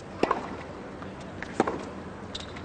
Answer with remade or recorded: recorded